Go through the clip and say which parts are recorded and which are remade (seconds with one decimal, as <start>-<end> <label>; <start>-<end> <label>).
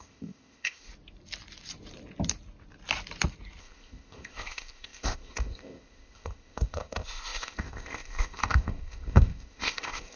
0.0-0.9 remade; 0.9-3.6 recorded; 3.6-10.2 remade